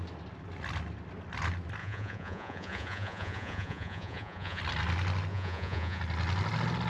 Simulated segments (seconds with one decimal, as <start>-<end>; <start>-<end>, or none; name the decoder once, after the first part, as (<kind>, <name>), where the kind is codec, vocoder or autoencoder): 1.8-4.6 (vocoder, Vocos); 5.3-6.0